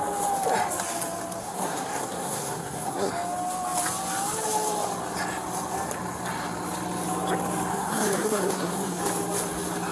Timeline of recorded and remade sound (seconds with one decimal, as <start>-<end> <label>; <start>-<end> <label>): 0.0-1.4 recorded; 1.4-3.1 remade; 3.1-7.7 recorded; 7.7-9.0 remade; 9.0-9.9 recorded